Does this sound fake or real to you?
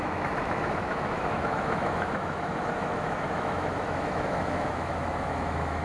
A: fake